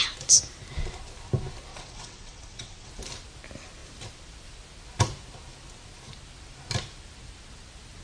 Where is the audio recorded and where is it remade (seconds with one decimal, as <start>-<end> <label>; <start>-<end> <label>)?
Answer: 0.0-1.7 recorded; 1.7-2.9 remade; 2.9-8.0 recorded